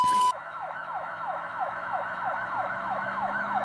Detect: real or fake fake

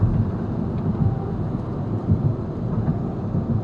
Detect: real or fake real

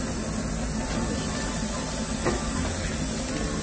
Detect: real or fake real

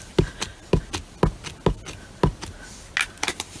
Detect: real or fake real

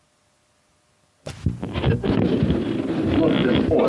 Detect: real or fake real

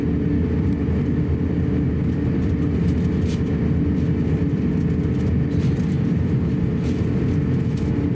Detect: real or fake real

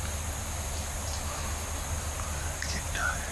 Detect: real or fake real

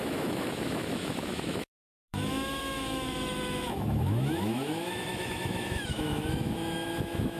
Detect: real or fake fake